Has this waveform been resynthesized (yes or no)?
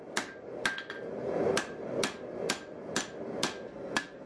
no